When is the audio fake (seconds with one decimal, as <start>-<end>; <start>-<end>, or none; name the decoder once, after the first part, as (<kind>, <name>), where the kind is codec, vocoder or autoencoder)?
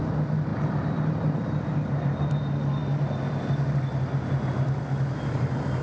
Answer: 0.5-2.2 (vocoder, BigVGAN v2)